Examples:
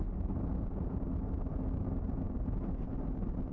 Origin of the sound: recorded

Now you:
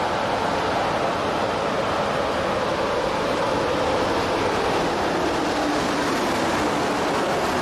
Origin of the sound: recorded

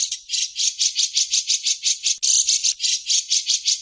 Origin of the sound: recorded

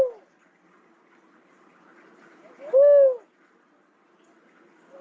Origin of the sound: recorded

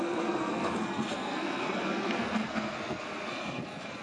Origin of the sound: remade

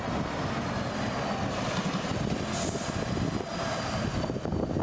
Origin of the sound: recorded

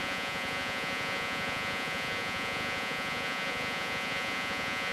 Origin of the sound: remade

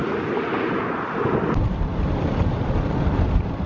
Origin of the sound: recorded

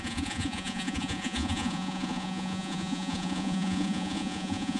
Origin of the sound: remade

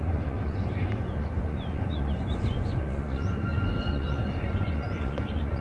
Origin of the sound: remade